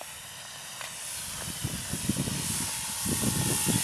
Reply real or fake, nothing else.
real